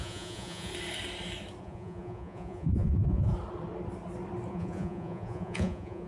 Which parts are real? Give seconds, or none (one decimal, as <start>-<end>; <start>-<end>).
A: 0.7-1.6; 3.3-4.5